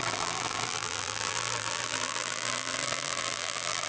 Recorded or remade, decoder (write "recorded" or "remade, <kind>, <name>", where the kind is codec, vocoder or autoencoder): remade, vocoder, BigVGAN v2